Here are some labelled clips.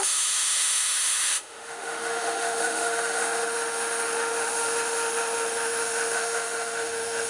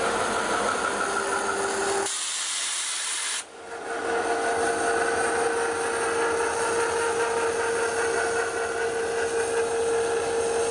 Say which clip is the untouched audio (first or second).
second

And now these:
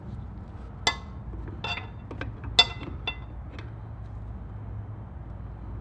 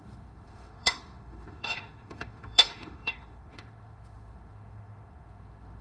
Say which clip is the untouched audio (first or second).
first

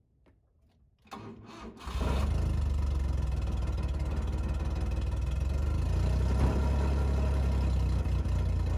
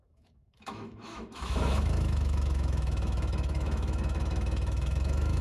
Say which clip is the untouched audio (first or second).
first